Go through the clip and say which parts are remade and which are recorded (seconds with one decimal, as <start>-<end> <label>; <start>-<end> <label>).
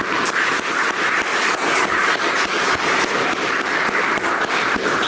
0.0-1.3 recorded; 1.3-4.4 remade; 4.4-5.1 recorded